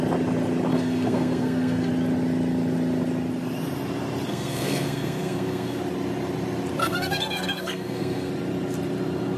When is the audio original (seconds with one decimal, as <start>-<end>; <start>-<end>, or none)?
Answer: 0.0-0.7; 1.9-4.3; 5.8-6.8; 8.3-9.4